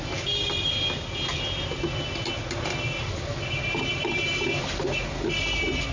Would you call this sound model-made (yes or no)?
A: no